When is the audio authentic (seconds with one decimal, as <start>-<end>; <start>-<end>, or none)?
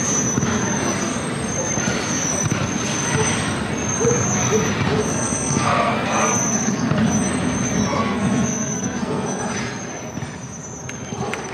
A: 0.0-5.1; 7.0-8.0; 9.4-11.5